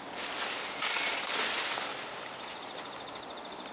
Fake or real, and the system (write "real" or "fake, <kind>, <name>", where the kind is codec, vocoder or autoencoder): real